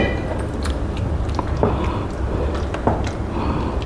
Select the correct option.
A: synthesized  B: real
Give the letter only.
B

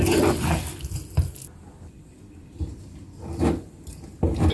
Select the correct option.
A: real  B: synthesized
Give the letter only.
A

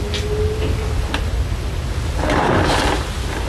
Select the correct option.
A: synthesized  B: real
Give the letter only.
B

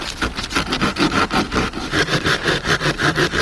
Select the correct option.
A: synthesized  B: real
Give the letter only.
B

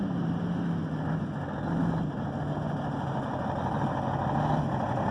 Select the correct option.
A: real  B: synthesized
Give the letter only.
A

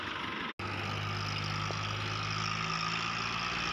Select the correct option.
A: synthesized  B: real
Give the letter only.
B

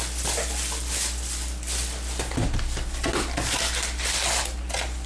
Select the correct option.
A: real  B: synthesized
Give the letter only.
A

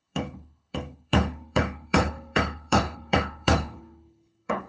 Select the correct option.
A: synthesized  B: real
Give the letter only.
A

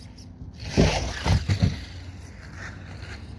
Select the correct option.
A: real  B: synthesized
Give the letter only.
A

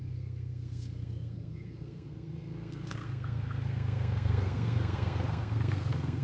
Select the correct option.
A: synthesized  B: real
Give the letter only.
A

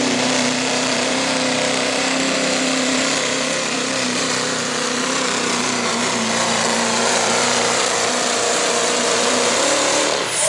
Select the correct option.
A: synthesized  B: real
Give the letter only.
A